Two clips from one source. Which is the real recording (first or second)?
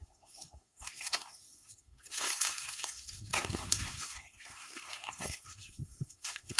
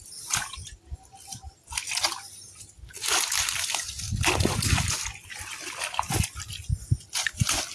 second